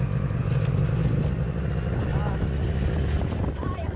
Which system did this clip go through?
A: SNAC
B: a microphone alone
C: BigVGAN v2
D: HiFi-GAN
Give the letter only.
B